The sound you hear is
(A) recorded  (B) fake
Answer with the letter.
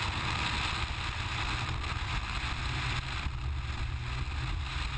A